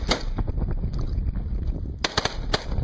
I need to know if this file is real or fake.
real